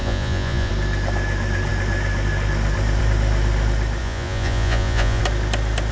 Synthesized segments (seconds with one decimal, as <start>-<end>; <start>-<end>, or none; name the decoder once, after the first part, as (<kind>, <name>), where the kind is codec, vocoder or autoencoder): 0.0-0.7 (vocoder, Vocos); 4.0-5.2